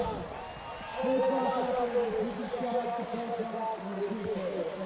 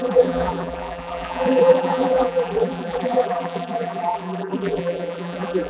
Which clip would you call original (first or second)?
first